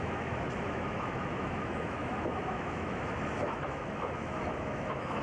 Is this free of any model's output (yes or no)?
no